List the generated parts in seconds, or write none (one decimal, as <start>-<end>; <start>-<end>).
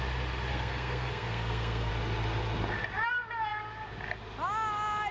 0.5-1.9